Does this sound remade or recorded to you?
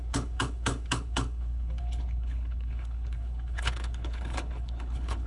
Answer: remade